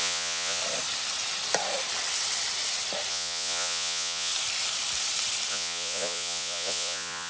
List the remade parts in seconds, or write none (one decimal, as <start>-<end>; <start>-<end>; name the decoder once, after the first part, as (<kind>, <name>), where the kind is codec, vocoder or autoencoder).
0.0-0.6 (vocoder, Vocos); 3.1-4.3; 5.5-7.3